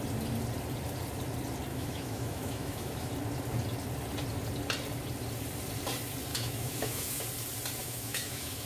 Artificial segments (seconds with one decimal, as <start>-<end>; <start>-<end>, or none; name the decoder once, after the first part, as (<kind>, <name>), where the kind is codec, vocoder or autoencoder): 1.7-3.1 (autoencoder, DAC-VAE); 6.3-7.2; 7.8-8.7